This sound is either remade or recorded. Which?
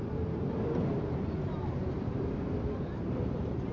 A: remade